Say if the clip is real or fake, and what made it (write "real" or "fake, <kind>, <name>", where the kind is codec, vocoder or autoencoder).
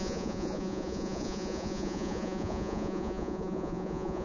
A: fake, vocoder, Vocos